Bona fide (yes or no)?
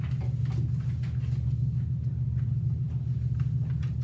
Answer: yes